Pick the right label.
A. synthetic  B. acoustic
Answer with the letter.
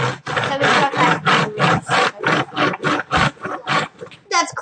B